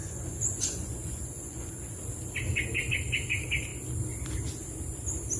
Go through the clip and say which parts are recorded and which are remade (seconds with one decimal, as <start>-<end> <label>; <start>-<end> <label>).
0.0-1.7 remade; 1.7-5.4 recorded

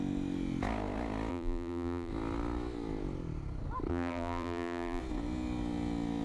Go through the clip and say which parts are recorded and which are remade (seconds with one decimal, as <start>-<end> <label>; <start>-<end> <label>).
0.0-1.3 recorded; 1.3-2.1 remade; 2.1-3.9 recorded; 3.9-5.0 remade; 5.0-6.2 recorded

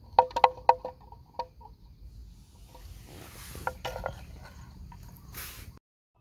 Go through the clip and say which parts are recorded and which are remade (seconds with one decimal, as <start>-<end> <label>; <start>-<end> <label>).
0.0-6.2 recorded

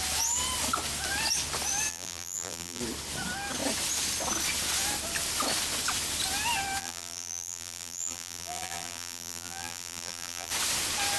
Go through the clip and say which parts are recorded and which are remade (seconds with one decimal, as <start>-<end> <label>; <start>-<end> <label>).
0.0-1.9 recorded; 1.9-2.8 remade; 2.8-6.8 recorded; 6.8-10.5 remade; 10.5-11.2 recorded

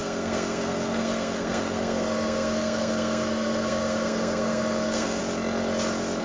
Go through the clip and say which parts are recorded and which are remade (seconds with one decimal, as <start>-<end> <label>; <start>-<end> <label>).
0.0-5.2 remade; 5.2-6.2 recorded

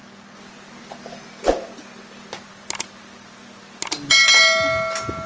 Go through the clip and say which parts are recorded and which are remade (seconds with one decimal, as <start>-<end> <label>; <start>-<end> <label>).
0.0-5.3 recorded